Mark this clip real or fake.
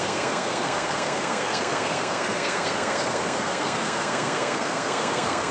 fake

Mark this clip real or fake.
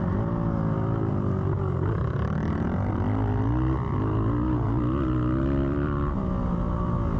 real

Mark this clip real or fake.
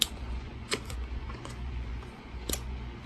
fake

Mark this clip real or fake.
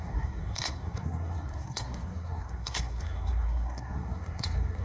fake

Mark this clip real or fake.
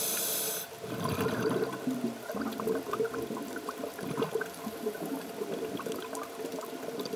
real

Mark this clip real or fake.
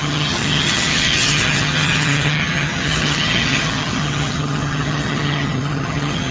fake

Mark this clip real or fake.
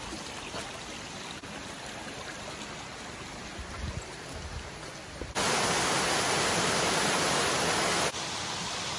real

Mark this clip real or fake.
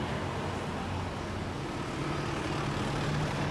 real